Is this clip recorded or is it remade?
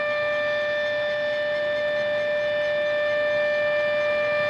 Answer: recorded